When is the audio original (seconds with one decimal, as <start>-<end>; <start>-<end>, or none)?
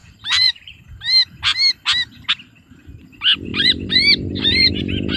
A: 0.8-3.5; 4.7-5.2